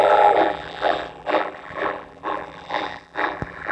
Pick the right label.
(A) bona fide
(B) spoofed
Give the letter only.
B